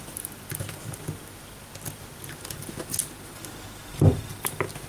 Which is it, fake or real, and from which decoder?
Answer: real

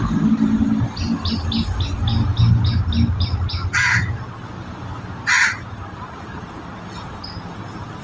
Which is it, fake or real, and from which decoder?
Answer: real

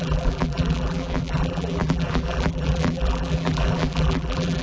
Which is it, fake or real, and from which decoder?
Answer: fake, vocoder, BigVGAN v2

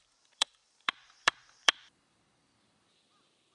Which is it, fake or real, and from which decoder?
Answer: fake, vocoder, BigVGAN v2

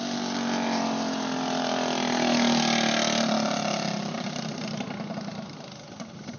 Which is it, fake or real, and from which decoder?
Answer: real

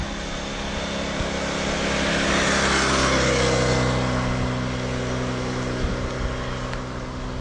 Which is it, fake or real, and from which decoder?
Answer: real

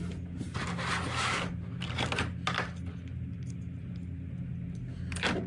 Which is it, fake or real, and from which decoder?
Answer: real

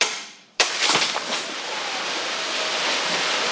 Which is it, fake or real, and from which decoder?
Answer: fake, vocoder, BigVGAN v2